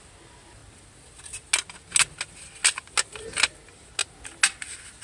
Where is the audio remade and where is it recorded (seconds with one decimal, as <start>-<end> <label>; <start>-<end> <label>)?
0.0-5.0 recorded